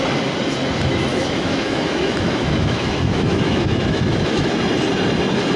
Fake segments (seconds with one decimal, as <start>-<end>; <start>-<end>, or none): 1.1-4.5